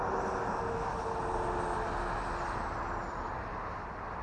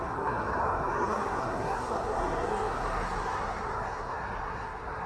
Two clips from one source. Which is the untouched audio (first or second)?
first